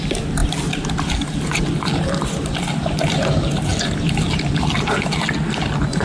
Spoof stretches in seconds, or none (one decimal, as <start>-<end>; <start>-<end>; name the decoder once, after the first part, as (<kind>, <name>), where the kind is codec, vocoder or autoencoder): none